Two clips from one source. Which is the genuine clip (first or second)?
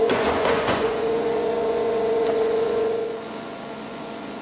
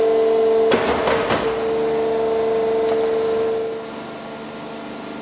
second